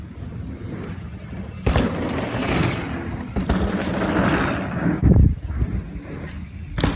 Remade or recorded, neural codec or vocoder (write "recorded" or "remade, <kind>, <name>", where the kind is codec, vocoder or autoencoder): recorded